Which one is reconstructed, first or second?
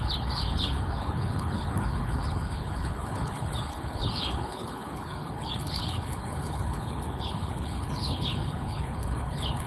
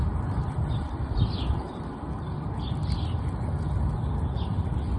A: first